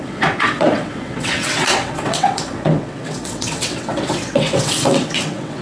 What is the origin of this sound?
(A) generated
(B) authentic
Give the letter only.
A